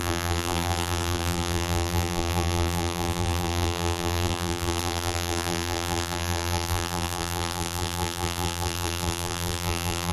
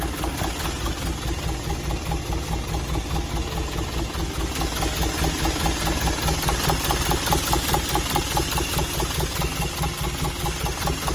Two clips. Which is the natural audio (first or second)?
second